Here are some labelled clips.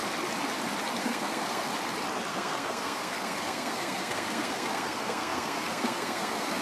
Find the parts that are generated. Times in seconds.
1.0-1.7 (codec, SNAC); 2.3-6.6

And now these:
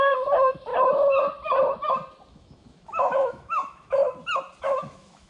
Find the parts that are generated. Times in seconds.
0.0-0.7 (autoencoder, DAC-VAE); 2.3-4.0; 4.6-5.3

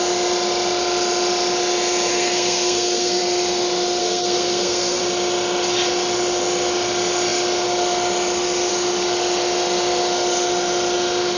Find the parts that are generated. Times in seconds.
2.1-3.2 (codec, SNAC); 4.0-5.0

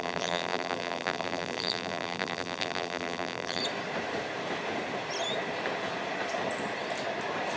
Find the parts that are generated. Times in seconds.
0.0-3.6 (vocoder, BigVGAN v2)

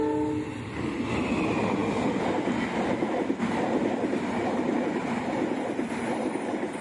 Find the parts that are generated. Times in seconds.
none